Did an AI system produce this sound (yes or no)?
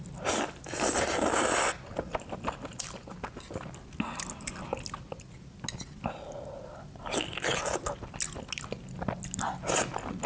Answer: no